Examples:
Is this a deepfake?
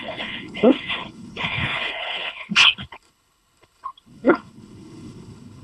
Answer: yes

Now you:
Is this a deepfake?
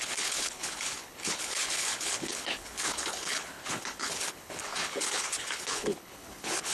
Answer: yes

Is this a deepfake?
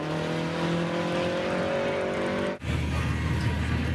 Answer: no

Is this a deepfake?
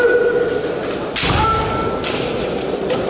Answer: no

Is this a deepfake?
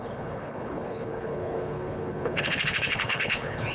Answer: yes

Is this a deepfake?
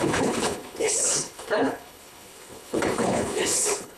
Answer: yes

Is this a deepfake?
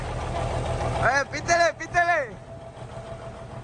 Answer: no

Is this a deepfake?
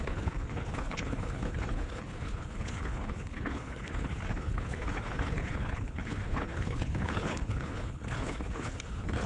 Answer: yes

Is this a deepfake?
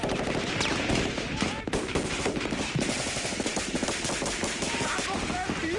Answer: no